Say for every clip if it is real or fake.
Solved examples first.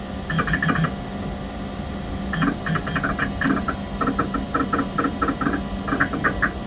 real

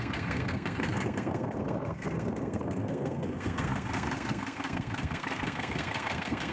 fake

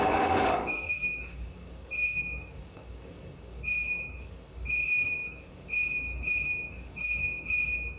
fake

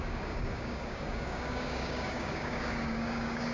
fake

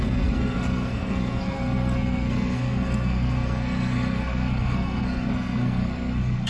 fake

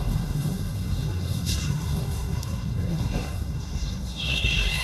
fake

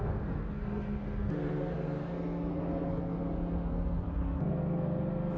fake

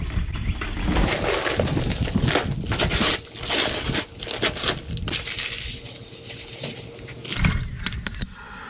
real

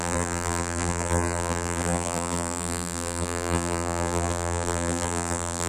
fake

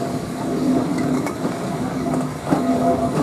fake